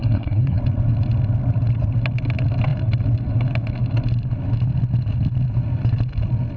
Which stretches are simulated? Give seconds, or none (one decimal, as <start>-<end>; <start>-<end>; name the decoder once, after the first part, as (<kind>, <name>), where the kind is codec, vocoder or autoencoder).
0.0-0.6 (codec, SNAC)